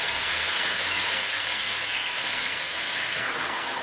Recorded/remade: remade